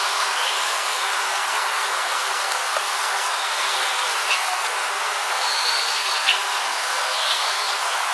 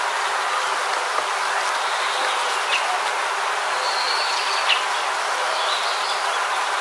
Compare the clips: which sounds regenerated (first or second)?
first